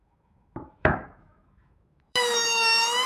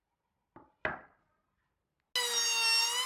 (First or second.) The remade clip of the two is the first